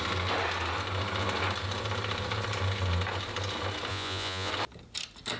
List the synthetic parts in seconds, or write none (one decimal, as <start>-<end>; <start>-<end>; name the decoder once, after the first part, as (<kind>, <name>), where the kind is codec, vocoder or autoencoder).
3.9-4.5 (vocoder, Vocos)